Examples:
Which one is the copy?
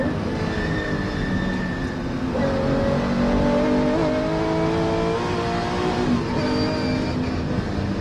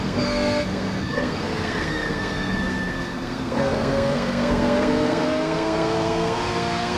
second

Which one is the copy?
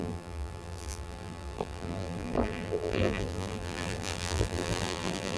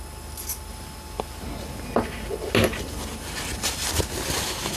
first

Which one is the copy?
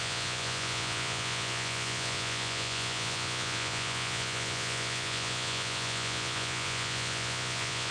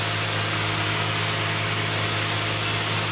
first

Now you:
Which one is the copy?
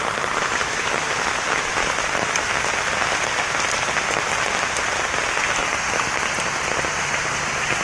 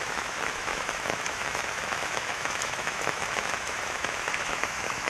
second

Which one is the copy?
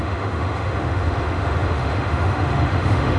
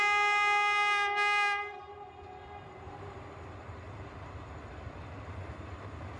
first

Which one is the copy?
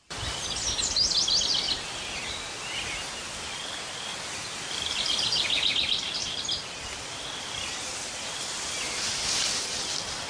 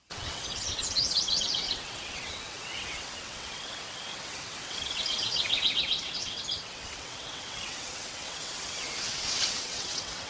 second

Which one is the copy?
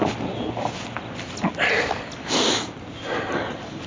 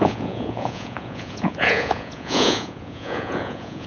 second